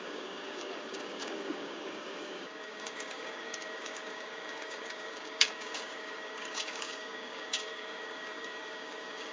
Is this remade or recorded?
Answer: remade